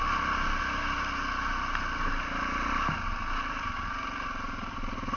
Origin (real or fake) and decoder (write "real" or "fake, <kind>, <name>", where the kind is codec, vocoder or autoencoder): real